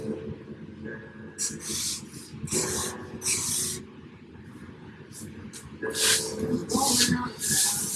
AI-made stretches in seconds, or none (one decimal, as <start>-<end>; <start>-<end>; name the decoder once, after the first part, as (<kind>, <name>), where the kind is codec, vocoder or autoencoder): none